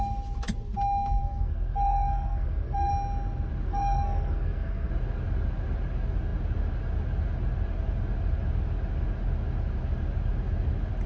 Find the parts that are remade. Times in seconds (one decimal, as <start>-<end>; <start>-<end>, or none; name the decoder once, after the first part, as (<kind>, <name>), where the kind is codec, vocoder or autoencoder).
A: 1.2-2.9 (codec, SNAC); 3.7-4.9